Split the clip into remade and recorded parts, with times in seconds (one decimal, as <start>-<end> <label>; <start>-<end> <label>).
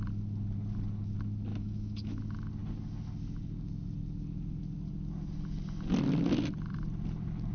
0.0-1.5 recorded; 1.5-2.2 remade; 2.2-7.5 recorded